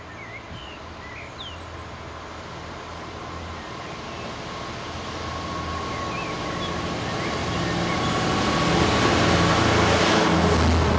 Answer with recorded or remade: recorded